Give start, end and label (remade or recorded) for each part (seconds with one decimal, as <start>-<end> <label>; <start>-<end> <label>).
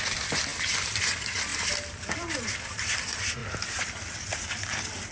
0.0-5.1 recorded